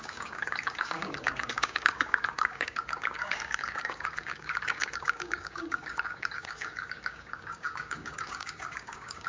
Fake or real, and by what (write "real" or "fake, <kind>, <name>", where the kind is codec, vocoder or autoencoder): fake, codec, DAC